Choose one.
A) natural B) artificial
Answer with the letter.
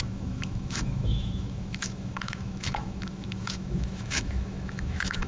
B